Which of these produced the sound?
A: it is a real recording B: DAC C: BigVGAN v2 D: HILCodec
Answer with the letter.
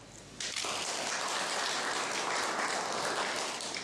A